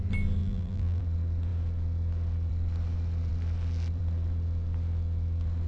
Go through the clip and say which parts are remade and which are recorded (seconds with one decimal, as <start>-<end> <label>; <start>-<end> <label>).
0.0-0.4 recorded; 0.4-1.0 remade; 1.0-5.7 recorded